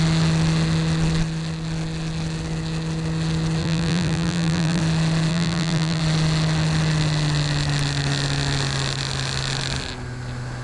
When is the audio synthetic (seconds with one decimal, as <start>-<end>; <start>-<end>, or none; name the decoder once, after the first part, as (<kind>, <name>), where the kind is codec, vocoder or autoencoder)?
3.6-4.8 (vocoder, BigVGAN v2); 5.3-6.0

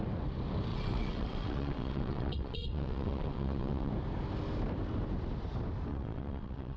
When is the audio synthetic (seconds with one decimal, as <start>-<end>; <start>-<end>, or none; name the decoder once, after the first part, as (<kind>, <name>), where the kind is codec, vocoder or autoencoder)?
0.7-3.9 (vocoder, WaveNeXt); 5.9-6.8

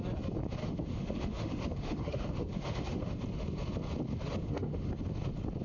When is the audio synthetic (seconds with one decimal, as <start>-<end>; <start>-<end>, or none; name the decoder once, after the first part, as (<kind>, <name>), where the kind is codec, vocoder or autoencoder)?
0.6-3.2 (autoencoder, DAC-VAE); 4.4-4.9

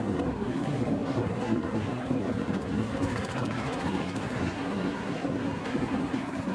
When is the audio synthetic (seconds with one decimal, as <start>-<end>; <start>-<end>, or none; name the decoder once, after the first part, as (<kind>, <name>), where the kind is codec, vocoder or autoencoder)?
0.0-6.5 (codec, SNAC)

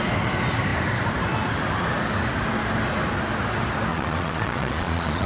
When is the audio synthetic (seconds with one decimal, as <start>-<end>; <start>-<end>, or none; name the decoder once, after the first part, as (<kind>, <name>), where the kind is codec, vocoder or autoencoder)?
3.9-5.3 (vocoder, Vocos)

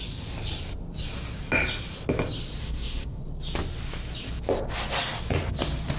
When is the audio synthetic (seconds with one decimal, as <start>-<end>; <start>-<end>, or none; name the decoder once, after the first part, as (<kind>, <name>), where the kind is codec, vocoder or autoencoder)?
2.6-3.2 (autoencoder, DAC-VAE)

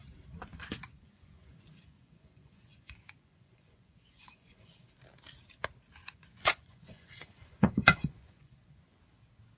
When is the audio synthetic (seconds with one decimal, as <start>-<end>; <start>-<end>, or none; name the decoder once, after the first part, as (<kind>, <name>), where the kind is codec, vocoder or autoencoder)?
0.5-4.9 (vocoder, Vocos); 6.0-9.0

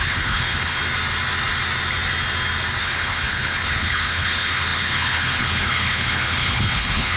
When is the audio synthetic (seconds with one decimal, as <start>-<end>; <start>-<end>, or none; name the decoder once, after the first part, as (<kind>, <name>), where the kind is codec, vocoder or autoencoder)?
0.0-0.8 (codec, HILCodec); 2.8-7.2